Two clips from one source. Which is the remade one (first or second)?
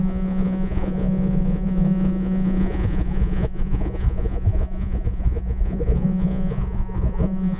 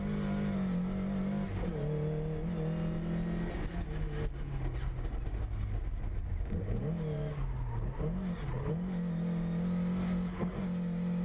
first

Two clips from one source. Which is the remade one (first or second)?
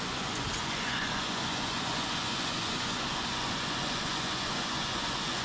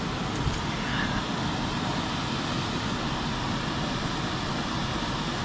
first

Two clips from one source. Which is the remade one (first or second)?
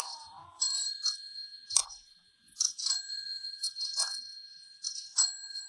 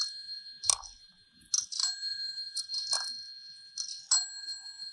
first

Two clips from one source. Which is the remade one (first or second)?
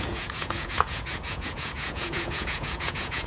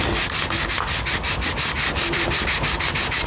first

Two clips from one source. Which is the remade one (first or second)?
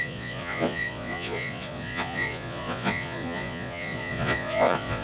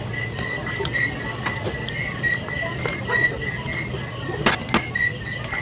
first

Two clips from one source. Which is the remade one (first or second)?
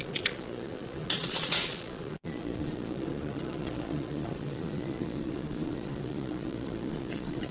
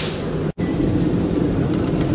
first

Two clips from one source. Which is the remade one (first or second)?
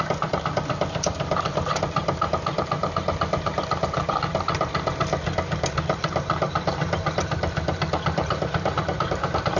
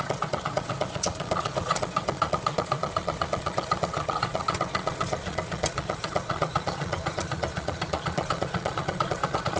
second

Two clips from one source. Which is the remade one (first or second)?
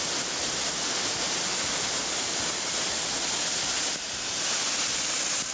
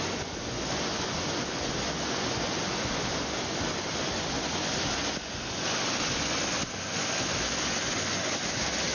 second